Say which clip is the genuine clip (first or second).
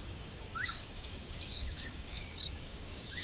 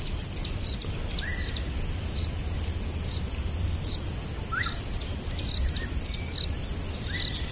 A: second